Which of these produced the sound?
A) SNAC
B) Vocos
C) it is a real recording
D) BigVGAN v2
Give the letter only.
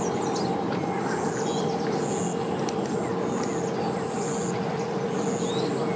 C